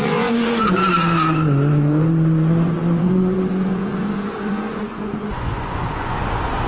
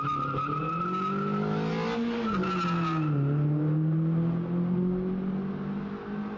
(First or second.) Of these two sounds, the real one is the second